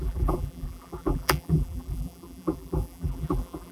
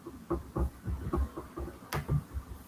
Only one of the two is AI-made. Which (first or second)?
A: first